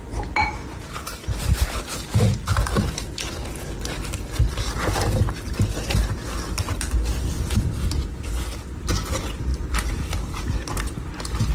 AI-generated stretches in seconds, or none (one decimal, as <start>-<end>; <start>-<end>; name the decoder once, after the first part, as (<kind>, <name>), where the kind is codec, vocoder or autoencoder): none